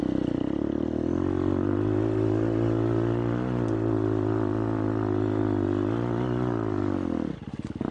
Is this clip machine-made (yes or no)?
no